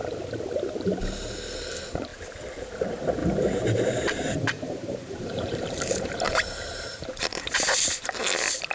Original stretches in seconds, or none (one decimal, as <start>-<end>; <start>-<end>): 0.0-2.1; 2.7-3.2; 8.1-8.7